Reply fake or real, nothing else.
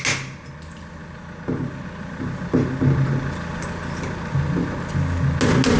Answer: real